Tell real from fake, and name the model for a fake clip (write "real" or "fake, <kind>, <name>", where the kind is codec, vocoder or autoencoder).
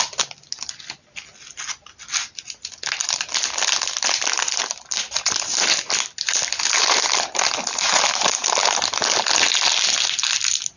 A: real